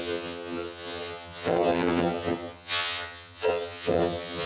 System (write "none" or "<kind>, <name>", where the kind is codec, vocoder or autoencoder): vocoder, HiFi-GAN